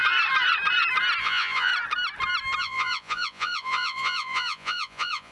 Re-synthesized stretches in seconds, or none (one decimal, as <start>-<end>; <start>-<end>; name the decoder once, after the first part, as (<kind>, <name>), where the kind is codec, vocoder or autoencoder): 1.2-1.7 (vocoder, Vocos); 2.6-5.3

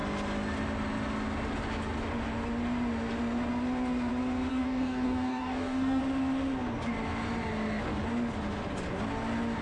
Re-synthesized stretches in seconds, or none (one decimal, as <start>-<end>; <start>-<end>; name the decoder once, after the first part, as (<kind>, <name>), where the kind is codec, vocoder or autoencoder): 4.5-6.0 (codec, DAC)

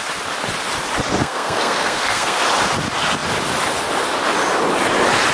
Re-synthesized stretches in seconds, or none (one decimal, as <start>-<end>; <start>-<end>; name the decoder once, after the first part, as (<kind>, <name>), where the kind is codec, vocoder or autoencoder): 1.2-2.4 (codec, SNAC)

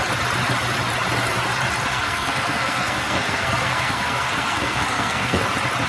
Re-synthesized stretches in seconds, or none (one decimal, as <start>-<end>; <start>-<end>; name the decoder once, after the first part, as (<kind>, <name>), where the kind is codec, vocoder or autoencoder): 1.9-5.4 (codec, SNAC)

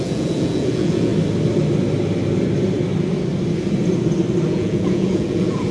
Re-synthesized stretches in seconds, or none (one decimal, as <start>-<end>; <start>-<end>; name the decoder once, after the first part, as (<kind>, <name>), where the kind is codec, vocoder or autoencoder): 0.0-1.1 (vocoder, Vocos); 4.5-5.7

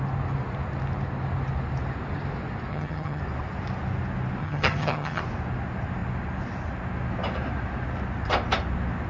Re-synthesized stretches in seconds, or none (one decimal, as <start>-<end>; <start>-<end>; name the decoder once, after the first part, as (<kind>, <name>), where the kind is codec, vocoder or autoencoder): 2.7-3.2 (vocoder, HiFi-GAN); 4.4-5.2

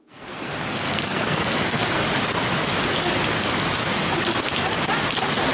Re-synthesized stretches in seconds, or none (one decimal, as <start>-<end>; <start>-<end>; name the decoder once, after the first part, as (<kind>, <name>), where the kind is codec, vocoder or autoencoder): 0.0-2.0 (codec, SNAC)

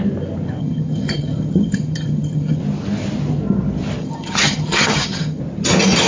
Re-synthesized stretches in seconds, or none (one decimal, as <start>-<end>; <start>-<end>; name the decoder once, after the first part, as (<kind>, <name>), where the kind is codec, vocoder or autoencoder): 0.6-2.6 (vocoder, HiFi-GAN); 4.0-5.4